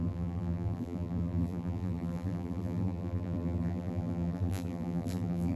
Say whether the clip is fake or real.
fake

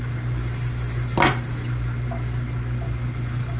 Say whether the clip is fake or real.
real